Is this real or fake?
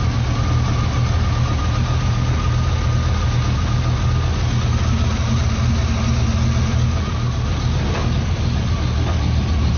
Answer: real